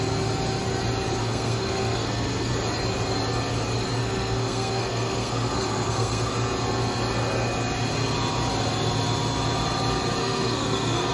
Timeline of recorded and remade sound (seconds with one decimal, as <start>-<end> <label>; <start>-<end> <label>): 0.0-1.2 recorded; 1.2-2.5 remade; 2.5-4.0 recorded; 4.0-6.3 remade; 6.3-10.2 recorded; 10.2-11.1 remade